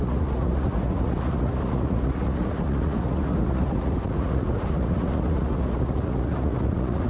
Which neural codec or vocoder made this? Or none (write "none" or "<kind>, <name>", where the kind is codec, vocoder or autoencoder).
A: vocoder, Vocos